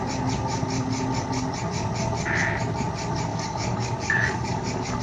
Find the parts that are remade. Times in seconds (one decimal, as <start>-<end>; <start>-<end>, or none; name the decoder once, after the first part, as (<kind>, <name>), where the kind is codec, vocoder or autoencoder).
3.3-5.0 (codec, DAC)